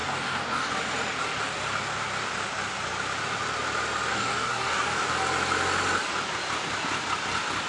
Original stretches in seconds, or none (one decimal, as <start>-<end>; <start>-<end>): 0.7-4.1; 5.1-7.7